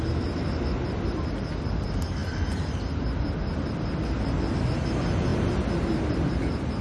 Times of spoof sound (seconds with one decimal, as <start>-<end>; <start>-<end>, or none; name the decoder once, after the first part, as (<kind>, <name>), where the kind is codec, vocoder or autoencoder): none